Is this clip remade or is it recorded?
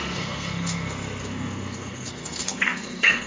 remade